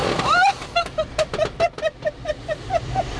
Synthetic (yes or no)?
yes